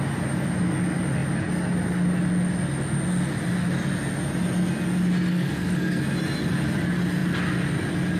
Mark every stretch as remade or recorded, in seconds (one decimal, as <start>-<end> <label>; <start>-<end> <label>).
0.0-5.3 recorded; 5.3-6.0 remade; 6.0-8.2 recorded